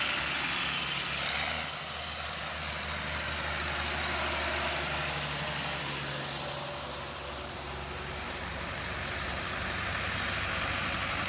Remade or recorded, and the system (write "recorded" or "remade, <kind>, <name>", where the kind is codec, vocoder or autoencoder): recorded